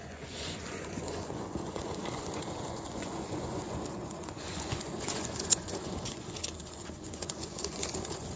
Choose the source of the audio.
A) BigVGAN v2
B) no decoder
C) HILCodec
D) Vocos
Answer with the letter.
D